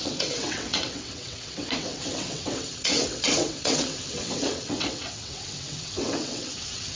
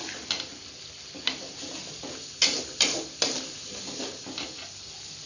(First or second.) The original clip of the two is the second